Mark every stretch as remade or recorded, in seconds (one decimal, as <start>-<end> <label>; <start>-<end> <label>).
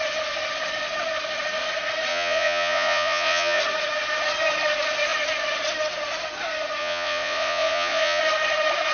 0.0-2.1 recorded; 2.1-3.6 remade; 3.6-6.8 recorded; 6.8-8.2 remade; 8.2-8.9 recorded